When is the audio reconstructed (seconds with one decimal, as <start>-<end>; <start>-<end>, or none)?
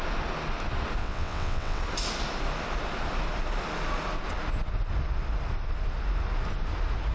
1.0-1.8